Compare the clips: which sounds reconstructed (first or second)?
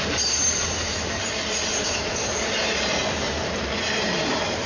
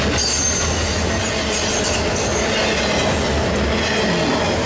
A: first